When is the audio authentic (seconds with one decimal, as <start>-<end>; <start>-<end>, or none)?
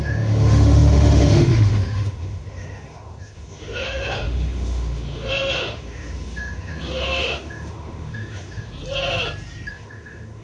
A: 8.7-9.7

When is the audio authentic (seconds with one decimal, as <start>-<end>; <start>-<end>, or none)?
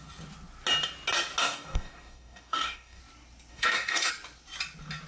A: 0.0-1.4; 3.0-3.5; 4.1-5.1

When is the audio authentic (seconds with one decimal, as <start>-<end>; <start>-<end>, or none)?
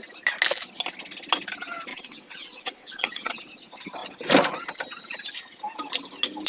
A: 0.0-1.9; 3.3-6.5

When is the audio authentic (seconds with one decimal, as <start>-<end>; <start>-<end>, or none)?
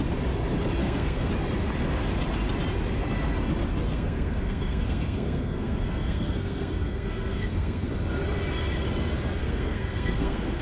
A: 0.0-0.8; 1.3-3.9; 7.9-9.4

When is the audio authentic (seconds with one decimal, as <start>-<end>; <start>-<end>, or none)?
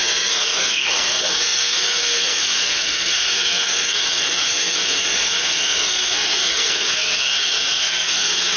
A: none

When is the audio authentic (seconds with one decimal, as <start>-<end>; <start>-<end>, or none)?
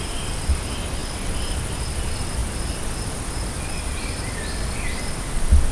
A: 0.0-5.7